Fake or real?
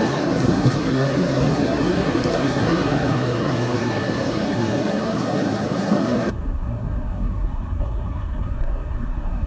fake